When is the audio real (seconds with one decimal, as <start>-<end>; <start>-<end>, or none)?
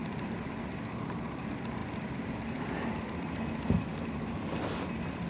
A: 0.0-5.3